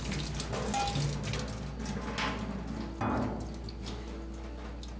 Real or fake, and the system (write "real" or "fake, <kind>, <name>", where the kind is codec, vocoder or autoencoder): real